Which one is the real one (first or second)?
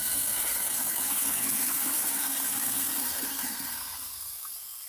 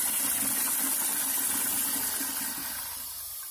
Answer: second